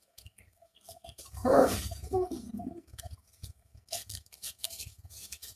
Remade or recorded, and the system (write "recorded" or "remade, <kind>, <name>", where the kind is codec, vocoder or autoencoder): remade, codec, SNAC